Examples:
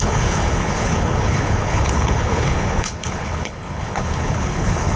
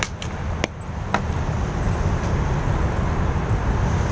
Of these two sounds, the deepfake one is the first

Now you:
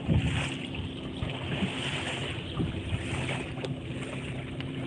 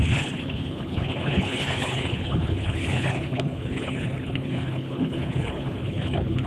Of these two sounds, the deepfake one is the second